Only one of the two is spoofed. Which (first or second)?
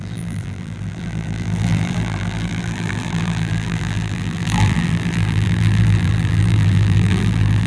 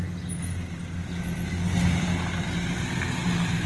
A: first